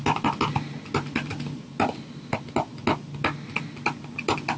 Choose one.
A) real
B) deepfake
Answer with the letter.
A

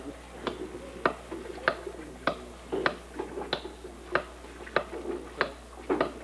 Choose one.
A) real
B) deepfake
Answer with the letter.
A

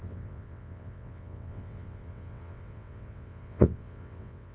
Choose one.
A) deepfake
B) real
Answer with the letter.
A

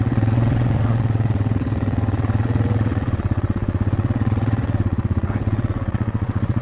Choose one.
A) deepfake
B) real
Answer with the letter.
A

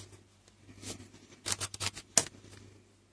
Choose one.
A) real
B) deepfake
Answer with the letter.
A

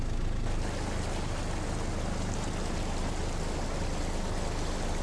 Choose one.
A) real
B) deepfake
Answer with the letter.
A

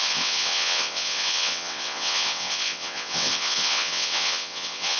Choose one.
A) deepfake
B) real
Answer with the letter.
A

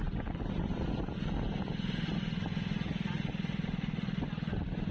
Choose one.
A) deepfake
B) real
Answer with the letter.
B